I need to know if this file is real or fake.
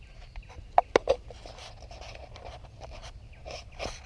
real